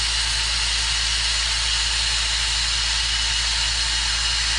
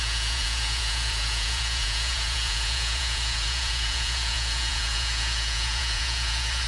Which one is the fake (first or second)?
second